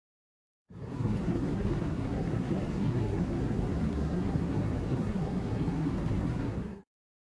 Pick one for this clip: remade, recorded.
remade